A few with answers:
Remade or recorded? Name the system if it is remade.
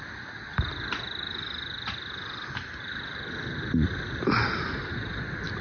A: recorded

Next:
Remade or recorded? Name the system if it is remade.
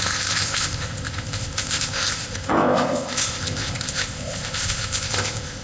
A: remade, codec, ZipCodec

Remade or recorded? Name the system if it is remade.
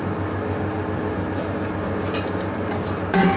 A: recorded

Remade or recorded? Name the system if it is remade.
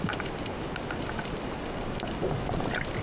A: recorded